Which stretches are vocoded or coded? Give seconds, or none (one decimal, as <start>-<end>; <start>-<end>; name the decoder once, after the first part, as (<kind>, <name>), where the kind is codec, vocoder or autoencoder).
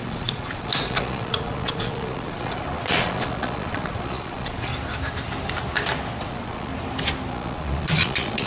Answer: 0.0-4.7 (vocoder, Vocos); 6.3-6.7; 7.3-8.5